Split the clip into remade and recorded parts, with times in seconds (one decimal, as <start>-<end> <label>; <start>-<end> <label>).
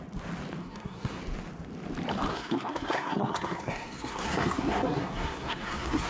0.0-0.6 recorded; 0.6-1.2 remade; 1.2-2.3 recorded; 2.3-6.1 remade